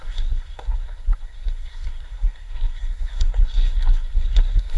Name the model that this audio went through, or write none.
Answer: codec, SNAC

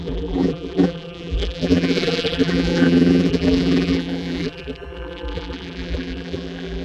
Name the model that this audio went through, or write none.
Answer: vocoder, BigVGAN v2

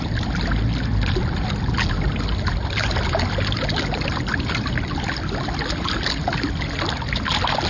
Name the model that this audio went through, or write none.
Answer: none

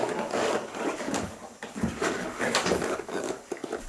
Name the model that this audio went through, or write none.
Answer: codec, DAC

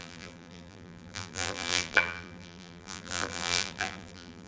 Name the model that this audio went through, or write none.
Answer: vocoder, BigVGAN v2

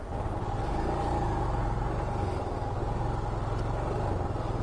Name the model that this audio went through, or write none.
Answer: none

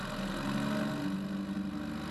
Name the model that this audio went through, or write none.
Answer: none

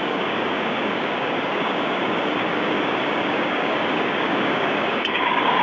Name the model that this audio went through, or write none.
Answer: codec, DAC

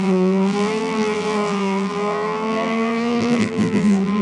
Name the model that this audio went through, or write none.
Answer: vocoder, BigVGAN v2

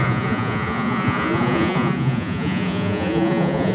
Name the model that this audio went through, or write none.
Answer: vocoder, Vocos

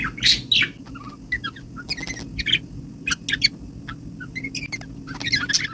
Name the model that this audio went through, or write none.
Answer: none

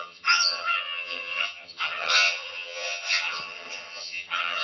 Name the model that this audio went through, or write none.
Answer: vocoder, HiFi-GAN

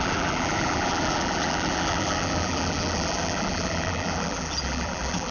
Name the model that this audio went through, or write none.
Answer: vocoder, BigVGAN v2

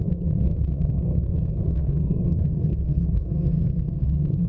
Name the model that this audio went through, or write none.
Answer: codec, SNAC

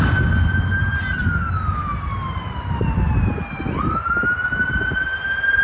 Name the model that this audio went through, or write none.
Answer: none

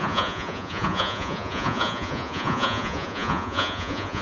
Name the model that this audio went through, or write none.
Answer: vocoder, Vocos